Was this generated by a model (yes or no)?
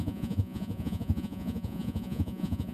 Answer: yes